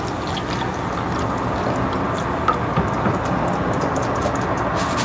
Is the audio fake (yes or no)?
no